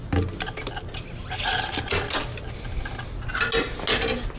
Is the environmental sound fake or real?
real